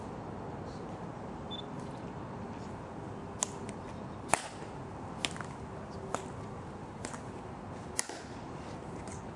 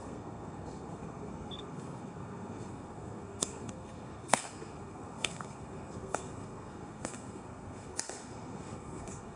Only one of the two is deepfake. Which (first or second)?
second